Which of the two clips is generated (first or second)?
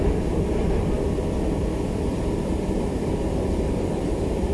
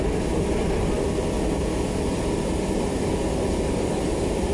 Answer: first